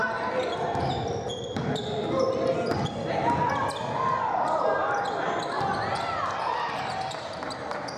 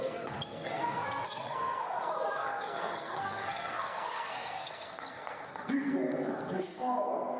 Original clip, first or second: first